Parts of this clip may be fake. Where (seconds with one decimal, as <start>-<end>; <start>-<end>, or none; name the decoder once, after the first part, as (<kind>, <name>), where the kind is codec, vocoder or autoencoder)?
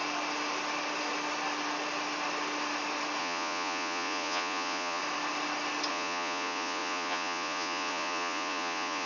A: 3.2-5.0 (vocoder, Vocos); 5.9-9.1